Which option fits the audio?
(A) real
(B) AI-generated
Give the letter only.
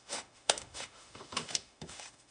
B